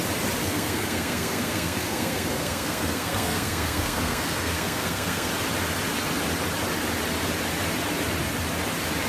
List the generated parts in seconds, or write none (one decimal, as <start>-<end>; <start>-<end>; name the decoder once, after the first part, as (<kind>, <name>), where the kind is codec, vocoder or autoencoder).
0.4-5.3 (codec, SNAC)